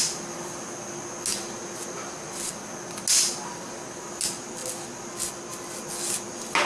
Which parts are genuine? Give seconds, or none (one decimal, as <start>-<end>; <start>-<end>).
0.0-6.7